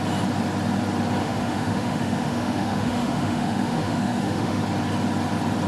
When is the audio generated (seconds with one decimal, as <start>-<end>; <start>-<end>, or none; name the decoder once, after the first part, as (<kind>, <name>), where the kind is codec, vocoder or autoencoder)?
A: 1.2-4.6 (autoencoder, DAC-VAE)